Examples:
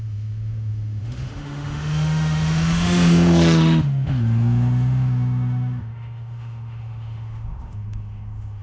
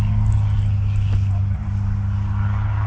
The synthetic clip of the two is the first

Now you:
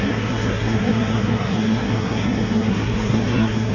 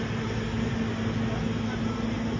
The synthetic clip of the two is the first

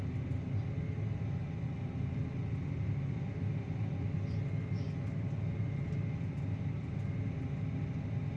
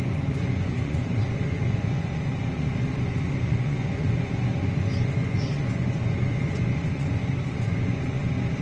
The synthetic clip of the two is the second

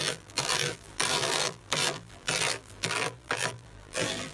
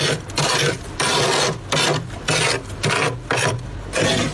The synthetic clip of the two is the first